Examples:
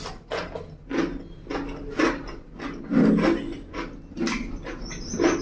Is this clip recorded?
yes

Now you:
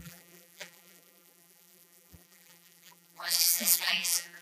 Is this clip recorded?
no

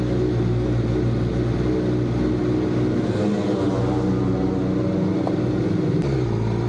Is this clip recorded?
yes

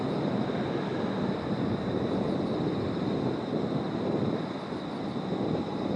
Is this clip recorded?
yes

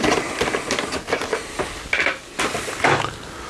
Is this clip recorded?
yes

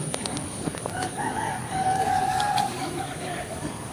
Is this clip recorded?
no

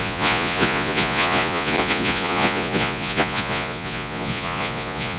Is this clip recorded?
no